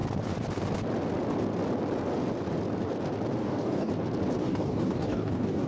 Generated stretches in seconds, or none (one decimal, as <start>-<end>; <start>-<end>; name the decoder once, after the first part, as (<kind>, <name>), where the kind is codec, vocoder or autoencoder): 3.4-3.9 (codec, DAC); 4.4-5.7